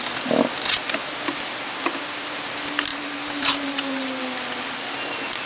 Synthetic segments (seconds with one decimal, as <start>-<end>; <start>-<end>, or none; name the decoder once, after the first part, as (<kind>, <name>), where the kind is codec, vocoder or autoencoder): 2.9-4.2 (vocoder, BigVGAN v2)